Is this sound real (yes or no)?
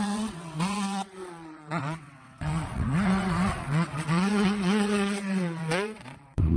no